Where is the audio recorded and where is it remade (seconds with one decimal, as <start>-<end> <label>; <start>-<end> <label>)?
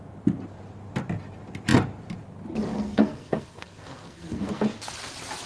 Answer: 0.0-2.7 recorded; 2.7-4.9 remade; 4.9-5.5 recorded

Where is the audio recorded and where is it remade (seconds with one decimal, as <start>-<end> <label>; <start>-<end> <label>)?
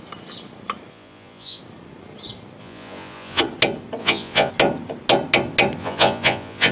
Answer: 0.0-0.9 recorded; 0.9-1.6 remade; 1.6-2.6 recorded; 2.6-3.4 remade; 3.4-4.0 recorded; 4.0-4.5 remade; 4.5-5.8 recorded; 5.8-6.7 remade